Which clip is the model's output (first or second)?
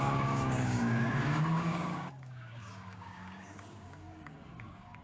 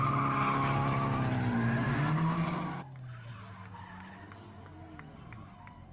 first